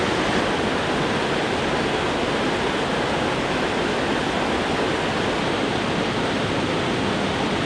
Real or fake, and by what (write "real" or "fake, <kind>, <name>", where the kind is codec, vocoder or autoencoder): real